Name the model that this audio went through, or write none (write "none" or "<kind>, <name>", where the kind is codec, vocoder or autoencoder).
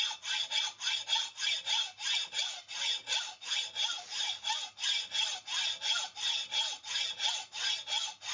none